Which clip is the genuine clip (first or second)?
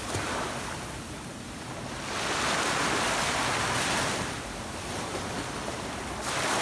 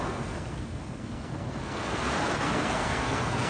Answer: first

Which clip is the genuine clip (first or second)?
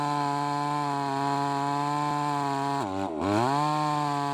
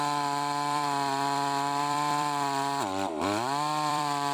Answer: first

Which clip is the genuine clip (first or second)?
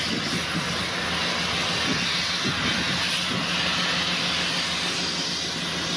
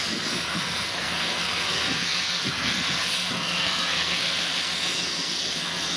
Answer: first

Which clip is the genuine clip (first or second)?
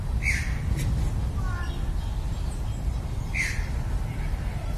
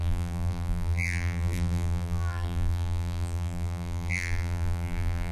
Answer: first